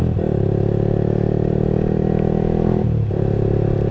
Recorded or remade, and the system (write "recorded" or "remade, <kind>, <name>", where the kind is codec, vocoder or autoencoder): recorded